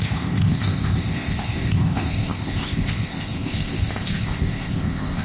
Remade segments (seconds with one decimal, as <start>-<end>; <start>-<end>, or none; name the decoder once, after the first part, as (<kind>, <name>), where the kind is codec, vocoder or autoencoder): 0.0-5.2 (codec, ZipCodec)